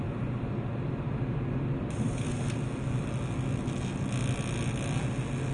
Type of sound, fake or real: real